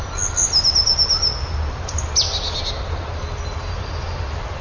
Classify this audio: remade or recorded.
recorded